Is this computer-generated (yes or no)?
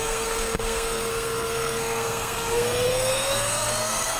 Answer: yes